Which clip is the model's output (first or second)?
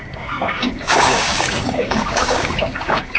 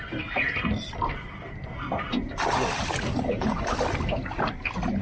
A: first